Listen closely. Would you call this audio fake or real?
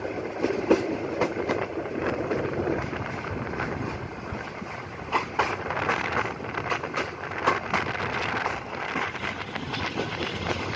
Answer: real